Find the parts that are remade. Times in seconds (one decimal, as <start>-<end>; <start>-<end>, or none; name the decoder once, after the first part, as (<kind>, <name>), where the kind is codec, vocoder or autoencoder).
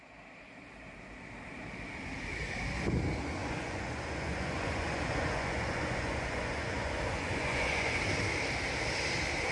3.4-8.0 (vocoder, Vocos)